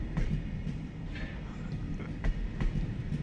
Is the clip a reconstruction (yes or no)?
no